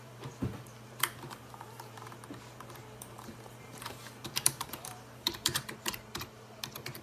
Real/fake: fake